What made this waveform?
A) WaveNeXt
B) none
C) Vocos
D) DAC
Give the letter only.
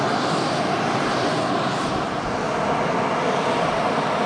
B